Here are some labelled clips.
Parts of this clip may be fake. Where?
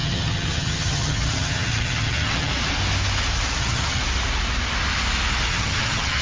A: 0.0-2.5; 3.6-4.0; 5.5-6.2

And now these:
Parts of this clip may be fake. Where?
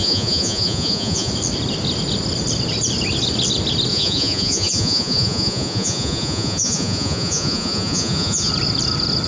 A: 0.0-1.3; 3.9-8.5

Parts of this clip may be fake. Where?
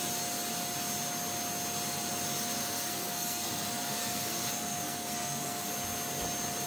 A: 2.6-5.7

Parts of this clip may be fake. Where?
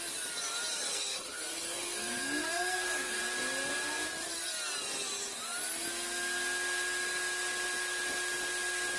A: 0.7-3.2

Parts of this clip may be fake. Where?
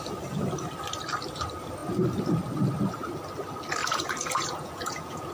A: 3.8-5.3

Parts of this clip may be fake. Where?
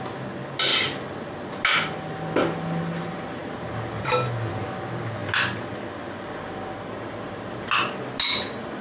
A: none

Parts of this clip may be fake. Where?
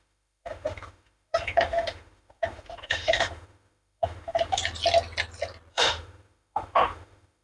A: 0.0-4.6; 5.7-7.4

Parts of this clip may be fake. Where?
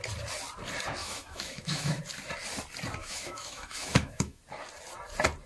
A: 1.0-2.0; 3.0-4.4